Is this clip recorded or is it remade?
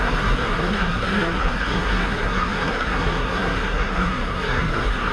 remade